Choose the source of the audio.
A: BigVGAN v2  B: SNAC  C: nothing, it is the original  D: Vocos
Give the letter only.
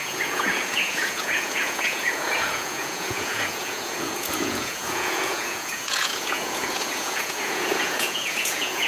D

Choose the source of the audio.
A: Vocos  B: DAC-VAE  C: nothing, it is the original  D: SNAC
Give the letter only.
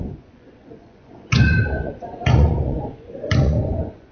A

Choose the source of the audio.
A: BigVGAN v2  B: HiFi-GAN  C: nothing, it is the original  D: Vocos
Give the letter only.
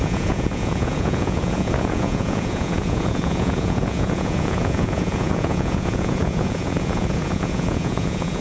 D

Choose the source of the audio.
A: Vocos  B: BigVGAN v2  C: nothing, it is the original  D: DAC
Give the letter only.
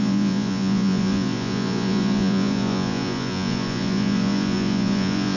A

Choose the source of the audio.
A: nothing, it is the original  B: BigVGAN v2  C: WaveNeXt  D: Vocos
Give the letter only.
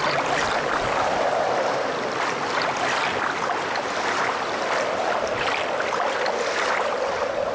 A